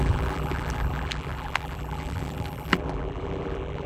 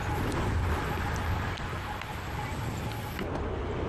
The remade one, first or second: first